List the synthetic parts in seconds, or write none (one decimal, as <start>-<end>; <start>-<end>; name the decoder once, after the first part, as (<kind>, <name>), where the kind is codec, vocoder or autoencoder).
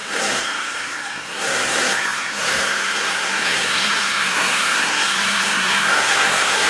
0.0-6.7 (codec, SNAC)